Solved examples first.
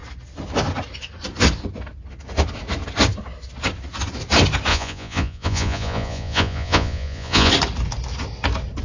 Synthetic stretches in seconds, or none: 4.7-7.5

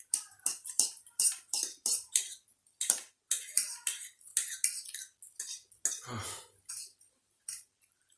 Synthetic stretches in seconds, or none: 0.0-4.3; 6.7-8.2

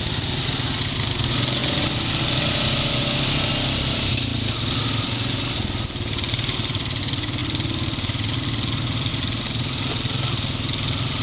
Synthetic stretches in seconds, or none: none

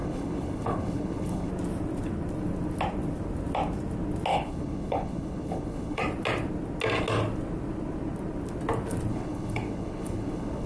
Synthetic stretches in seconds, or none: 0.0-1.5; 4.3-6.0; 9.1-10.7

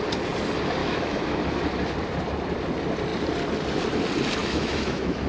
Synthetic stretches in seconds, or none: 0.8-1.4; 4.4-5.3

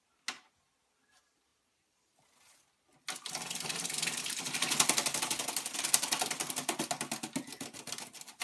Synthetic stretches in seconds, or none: none